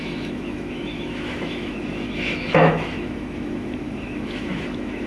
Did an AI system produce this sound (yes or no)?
yes